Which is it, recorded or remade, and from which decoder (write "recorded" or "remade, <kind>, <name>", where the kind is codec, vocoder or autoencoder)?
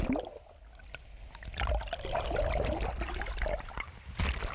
recorded